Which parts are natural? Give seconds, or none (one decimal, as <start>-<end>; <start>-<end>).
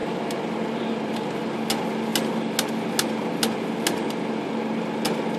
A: 0.0-5.4